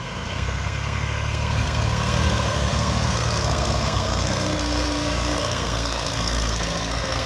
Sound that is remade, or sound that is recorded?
remade